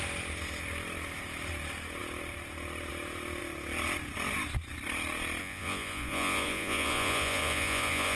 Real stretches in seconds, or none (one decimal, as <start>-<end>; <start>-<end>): 0.0-5.4